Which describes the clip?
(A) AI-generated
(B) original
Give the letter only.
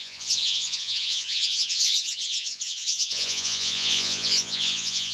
A